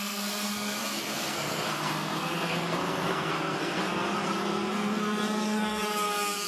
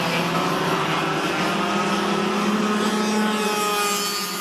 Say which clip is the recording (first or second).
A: second